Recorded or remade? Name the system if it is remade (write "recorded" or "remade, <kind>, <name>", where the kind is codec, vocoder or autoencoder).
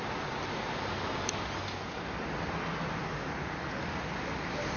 recorded